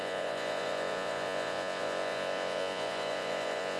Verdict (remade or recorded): remade